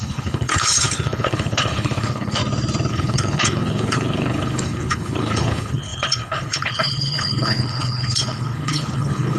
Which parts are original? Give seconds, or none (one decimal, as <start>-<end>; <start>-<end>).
2.4-2.9